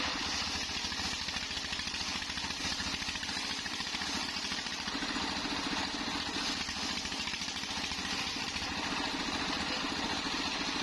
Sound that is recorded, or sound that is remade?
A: recorded